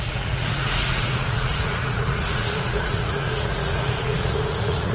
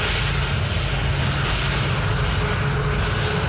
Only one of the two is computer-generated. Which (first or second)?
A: first